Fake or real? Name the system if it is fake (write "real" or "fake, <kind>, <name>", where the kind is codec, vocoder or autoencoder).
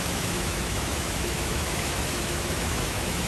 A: fake, autoencoder, DAC-VAE